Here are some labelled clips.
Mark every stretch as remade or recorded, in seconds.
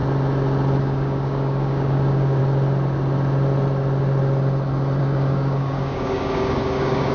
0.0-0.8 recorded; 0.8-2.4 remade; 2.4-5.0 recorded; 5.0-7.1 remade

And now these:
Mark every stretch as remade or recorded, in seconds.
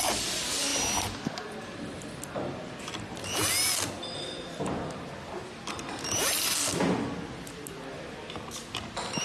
0.0-9.2 recorded